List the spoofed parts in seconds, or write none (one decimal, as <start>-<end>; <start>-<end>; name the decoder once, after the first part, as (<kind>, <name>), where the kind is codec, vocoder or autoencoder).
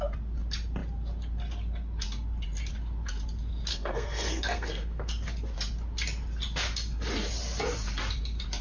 3.7-5.1 (codec, SNAC)